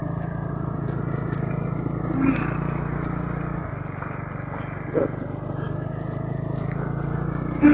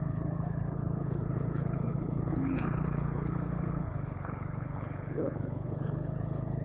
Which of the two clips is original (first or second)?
first